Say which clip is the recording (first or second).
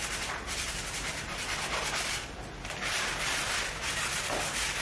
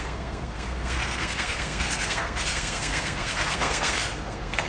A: first